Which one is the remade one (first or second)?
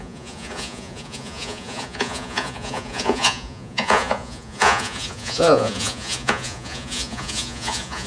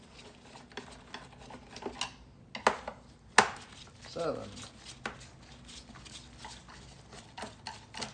first